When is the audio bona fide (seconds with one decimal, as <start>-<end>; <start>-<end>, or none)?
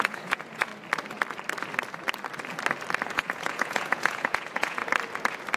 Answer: 0.7-3.1; 4.8-5.6